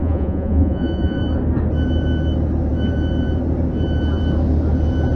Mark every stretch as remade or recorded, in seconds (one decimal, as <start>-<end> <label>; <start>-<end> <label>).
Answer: 0.0-1.2 remade; 1.2-5.2 recorded